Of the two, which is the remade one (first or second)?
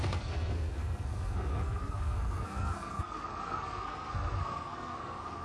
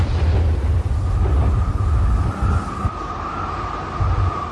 first